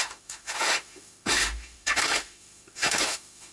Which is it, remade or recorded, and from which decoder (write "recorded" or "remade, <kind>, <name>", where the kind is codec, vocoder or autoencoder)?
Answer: remade, autoencoder, DAC-VAE